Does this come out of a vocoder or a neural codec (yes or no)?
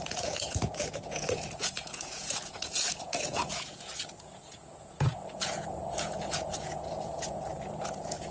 yes